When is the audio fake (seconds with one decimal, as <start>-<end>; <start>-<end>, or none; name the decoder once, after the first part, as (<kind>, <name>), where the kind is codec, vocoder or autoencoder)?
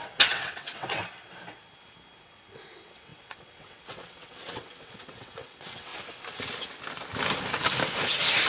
0.0-1.0 (vocoder, WaveNeXt); 2.2-5.9